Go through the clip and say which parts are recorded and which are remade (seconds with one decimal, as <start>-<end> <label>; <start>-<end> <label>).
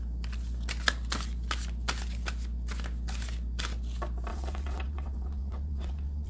0.0-4.3 recorded; 4.3-6.3 remade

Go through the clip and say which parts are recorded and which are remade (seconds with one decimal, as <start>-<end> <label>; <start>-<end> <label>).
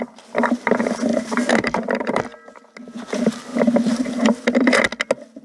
0.0-1.1 recorded; 1.1-2.2 remade; 2.2-3.5 recorded; 3.5-4.1 remade; 4.1-5.4 recorded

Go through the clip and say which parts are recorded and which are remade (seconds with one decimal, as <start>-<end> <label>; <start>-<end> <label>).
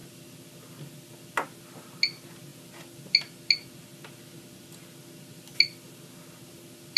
0.0-7.0 recorded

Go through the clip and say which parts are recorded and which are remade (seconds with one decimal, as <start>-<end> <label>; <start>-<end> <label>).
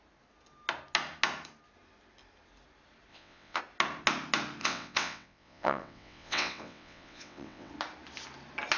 0.0-3.1 recorded; 3.1-3.6 remade; 3.6-4.6 recorded; 4.6-7.7 remade; 7.7-8.8 recorded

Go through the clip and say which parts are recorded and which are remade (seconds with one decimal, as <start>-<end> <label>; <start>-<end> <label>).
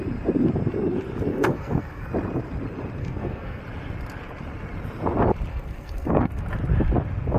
0.0-1.3 recorded; 1.3-2.1 remade; 2.1-3.0 recorded; 3.0-3.6 remade; 3.6-5.5 recorded; 5.5-6.4 remade; 6.4-7.4 recorded